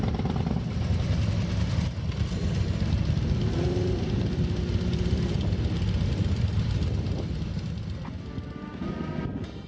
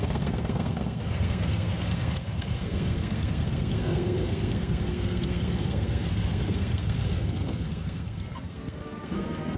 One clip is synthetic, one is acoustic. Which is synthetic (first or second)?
second